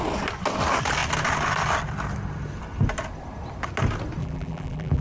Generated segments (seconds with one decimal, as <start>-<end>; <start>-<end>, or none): 4.2-5.0